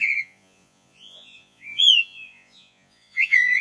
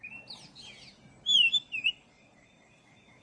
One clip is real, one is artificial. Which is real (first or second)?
second